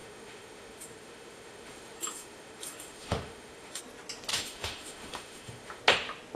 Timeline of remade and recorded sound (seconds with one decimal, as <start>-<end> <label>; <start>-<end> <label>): 0.0-3.8 remade; 3.8-4.3 recorded; 4.3-5.8 remade; 5.8-6.4 recorded